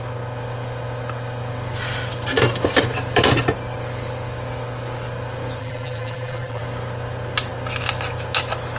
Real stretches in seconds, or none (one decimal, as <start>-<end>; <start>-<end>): 0.0-5.6; 6.6-8.8

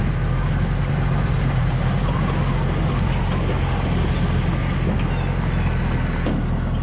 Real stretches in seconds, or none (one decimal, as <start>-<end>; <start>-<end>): 0.0-6.8